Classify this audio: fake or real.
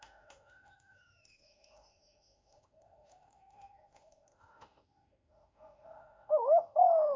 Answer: fake